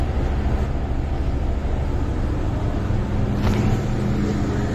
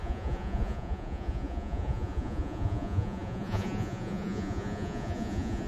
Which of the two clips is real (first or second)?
first